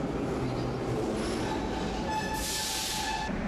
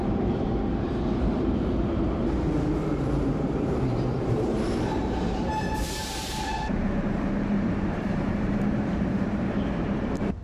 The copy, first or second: second